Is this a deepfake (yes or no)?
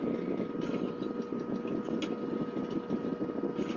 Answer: no